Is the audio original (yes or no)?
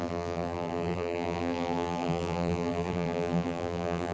no